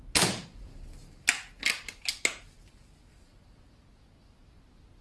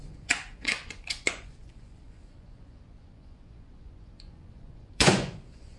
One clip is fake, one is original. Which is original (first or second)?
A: first